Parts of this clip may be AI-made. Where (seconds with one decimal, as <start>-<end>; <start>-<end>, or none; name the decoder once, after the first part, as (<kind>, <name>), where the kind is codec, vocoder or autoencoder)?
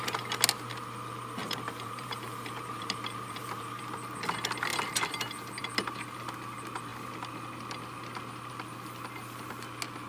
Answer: 1.4-3.8 (vocoder, BigVGAN v2)